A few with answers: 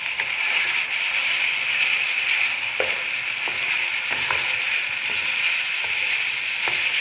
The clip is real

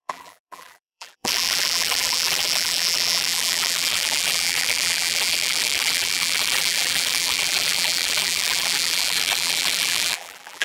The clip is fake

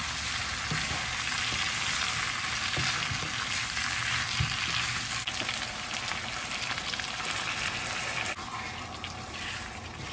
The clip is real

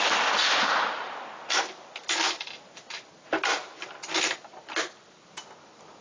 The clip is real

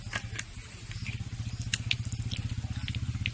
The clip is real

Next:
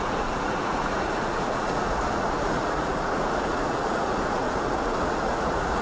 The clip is fake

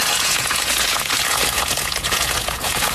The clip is fake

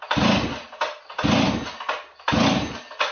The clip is real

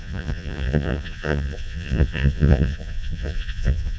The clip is fake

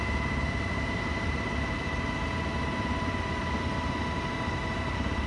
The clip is real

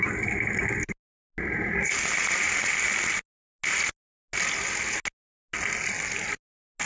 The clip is real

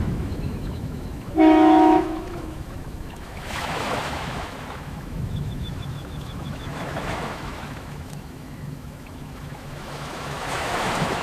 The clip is fake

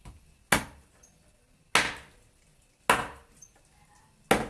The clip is real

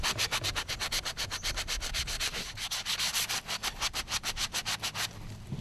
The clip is fake